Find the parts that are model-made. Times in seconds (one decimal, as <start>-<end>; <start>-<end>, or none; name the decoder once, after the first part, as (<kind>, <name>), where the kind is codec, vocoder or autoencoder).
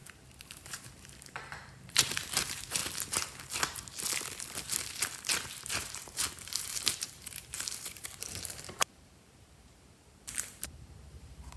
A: 0.0-2.8 (vocoder, BigVGAN v2); 5.5-11.6